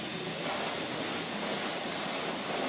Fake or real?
real